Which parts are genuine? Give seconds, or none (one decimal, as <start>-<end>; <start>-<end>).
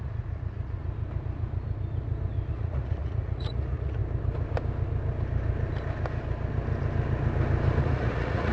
0.8-2.5; 4.0-7.8